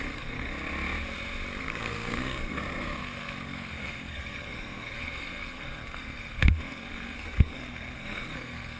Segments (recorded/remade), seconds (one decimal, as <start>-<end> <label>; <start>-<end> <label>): 0.0-0.5 remade; 0.5-1.6 recorded; 1.6-8.8 remade